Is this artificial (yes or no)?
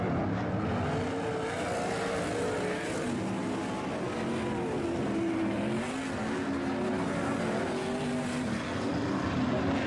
no